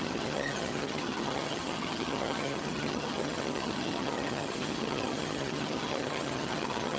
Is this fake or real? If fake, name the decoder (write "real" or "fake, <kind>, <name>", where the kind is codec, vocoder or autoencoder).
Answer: fake, vocoder, HiFi-GAN